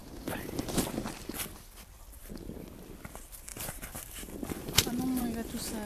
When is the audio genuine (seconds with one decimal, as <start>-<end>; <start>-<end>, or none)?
2.3-3.5; 5.2-5.9